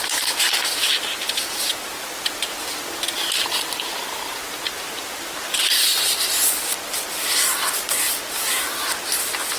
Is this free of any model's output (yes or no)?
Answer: yes